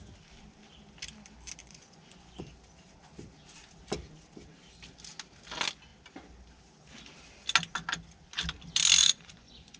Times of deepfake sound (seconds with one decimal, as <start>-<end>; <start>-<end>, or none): 1.6-2.4; 9.0-9.8